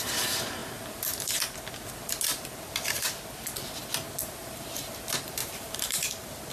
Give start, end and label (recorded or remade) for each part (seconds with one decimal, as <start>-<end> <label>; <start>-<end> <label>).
0.0-4.2 recorded; 4.2-5.0 remade; 5.0-5.4 recorded; 5.4-6.0 remade; 6.0-6.5 recorded